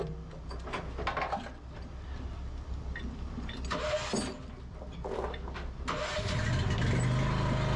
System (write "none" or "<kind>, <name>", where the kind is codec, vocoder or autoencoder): none